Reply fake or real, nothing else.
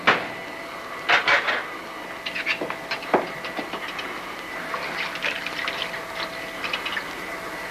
real